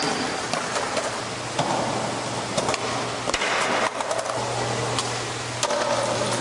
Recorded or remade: recorded